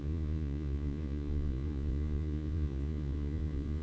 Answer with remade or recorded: remade